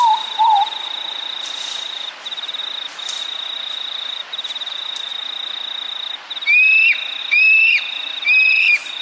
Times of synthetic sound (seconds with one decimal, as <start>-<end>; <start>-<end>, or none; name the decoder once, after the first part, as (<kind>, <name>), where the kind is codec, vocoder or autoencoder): 0.0-2.6 (vocoder, BigVGAN v2); 3.2-5.1; 7.2-9.0